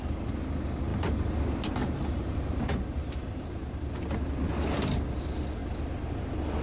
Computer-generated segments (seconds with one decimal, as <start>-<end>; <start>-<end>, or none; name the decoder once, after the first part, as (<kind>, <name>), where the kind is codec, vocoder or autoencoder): 0.9-1.4 (vocoder, BigVGAN v2); 1.8-3.6